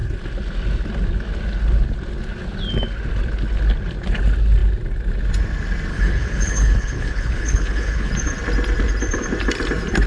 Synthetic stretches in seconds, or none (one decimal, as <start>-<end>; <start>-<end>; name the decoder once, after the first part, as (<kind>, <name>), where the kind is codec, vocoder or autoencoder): 5.9-8.1 (codec, HILCodec)